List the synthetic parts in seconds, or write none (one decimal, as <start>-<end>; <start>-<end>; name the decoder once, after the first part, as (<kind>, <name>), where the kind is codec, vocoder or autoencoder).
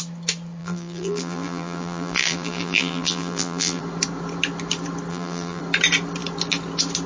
0.6-3.8 (vocoder, BigVGAN v2); 5.1-5.6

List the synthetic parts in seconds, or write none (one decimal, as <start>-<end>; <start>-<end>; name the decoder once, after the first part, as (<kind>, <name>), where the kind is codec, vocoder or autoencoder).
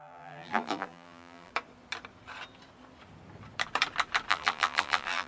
0.0-1.5 (vocoder, BigVGAN v2); 4.3-5.3